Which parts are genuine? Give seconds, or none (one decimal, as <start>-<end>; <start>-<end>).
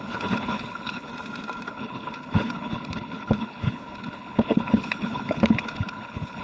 1.1-1.7